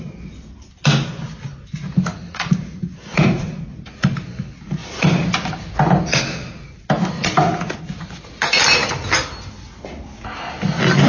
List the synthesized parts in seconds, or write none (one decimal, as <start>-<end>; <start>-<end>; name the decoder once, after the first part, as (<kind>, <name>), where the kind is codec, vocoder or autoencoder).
2.1-3.6 (vocoder, Vocos)